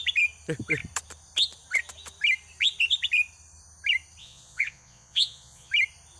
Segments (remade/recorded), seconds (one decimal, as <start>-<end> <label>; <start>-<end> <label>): 0.0-4.2 recorded; 4.2-5.7 remade; 5.7-6.2 recorded

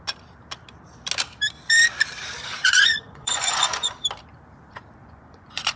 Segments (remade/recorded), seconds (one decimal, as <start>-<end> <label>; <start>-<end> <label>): 0.0-2.6 recorded; 2.6-3.9 remade; 3.9-5.0 recorded; 5.0-5.8 remade